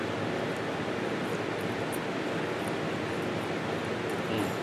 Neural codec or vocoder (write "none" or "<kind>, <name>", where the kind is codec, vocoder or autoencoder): none